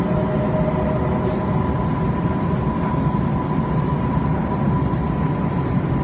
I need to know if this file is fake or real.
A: real